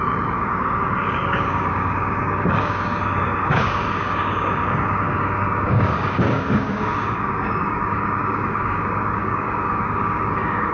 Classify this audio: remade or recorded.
remade